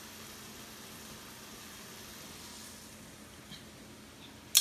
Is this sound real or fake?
real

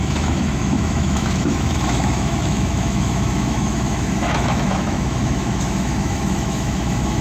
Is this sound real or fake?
fake